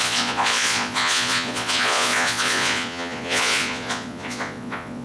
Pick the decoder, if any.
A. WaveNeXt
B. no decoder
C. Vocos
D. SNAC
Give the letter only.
C